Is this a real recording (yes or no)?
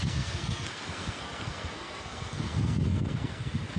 no